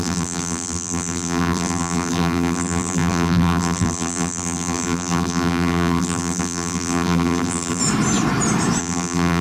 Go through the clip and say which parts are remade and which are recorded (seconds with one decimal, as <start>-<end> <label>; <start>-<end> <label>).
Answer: 0.0-7.8 remade; 7.8-8.8 recorded; 8.8-9.4 remade